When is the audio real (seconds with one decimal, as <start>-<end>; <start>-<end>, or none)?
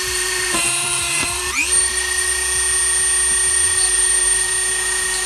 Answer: 2.4-3.5; 4.5-5.3